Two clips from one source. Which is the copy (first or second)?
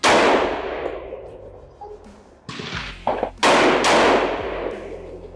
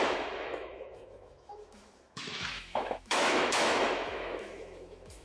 second